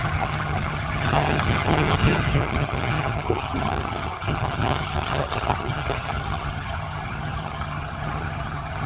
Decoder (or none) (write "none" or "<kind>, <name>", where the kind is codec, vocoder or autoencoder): vocoder, HiFi-GAN